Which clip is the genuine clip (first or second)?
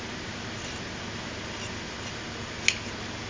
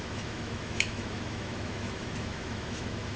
first